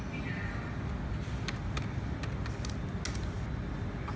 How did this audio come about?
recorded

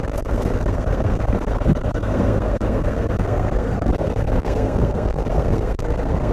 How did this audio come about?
remade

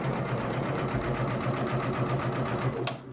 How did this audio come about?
recorded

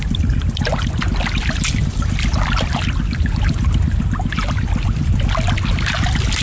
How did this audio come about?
recorded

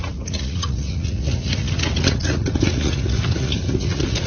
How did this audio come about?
remade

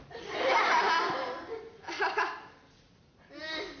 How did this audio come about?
recorded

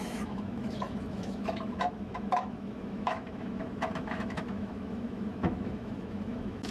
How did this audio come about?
remade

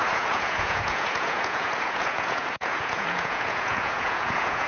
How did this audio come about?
remade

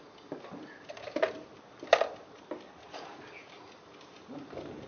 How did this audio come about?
recorded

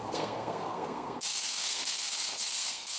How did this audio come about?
remade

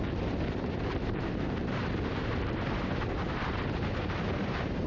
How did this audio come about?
remade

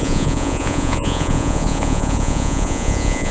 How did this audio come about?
remade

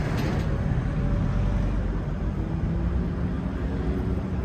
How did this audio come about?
recorded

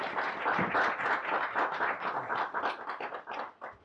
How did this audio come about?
recorded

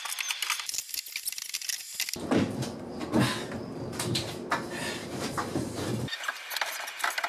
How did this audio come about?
recorded